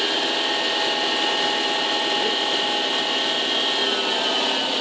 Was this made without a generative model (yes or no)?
yes